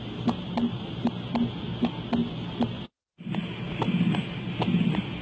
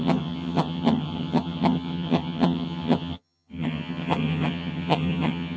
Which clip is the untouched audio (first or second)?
first